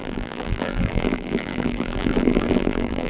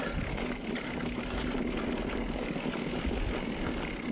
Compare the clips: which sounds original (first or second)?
second